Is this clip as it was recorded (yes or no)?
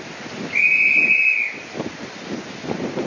yes